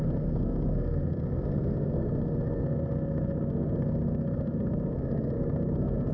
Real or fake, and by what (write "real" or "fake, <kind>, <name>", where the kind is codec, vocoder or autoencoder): fake, codec, SNAC